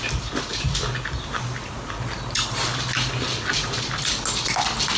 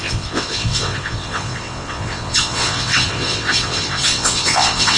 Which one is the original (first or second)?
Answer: first